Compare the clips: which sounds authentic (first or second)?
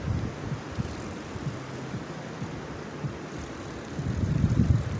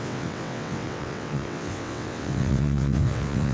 first